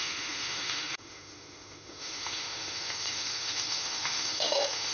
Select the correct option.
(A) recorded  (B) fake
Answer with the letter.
B